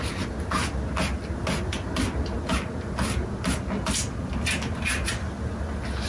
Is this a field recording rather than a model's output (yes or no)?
yes